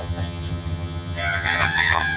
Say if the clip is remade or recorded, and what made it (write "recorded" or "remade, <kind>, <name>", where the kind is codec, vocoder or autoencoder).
remade, vocoder, HiFi-GAN